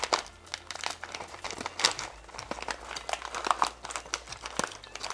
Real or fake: real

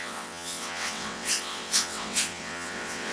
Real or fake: fake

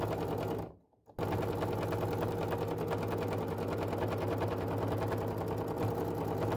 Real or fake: real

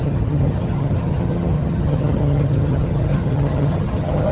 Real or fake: fake